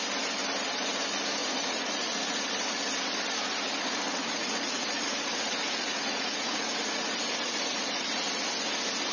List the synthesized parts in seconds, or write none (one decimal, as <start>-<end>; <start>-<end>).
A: 1.4-2.4; 4.2-8.2